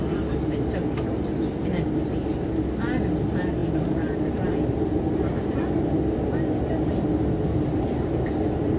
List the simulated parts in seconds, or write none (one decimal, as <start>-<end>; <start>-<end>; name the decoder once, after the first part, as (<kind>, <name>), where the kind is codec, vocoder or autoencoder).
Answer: none